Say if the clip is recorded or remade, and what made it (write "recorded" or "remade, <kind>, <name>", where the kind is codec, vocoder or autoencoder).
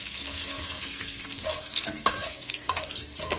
remade, codec, SNAC